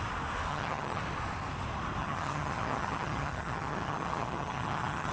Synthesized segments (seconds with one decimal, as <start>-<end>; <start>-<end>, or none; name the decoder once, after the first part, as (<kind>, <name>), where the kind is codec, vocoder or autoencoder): 0.5-1.0 (vocoder, HiFi-GAN); 2.0-5.1